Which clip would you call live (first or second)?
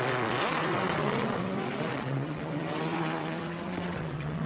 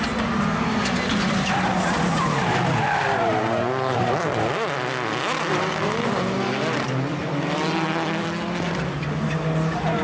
second